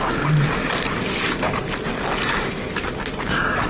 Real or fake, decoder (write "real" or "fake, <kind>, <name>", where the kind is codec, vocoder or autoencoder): real